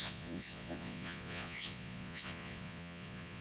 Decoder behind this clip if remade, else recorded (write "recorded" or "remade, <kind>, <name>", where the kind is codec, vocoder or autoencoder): remade, vocoder, Vocos